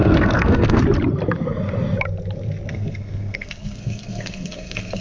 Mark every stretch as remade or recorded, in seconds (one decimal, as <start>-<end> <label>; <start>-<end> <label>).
0.0-0.8 remade; 0.8-2.7 recorded; 2.7-5.0 remade